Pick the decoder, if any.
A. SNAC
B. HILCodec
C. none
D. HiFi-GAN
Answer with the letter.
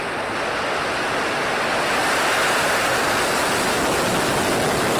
C